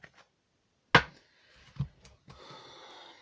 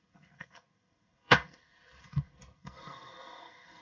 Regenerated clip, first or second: second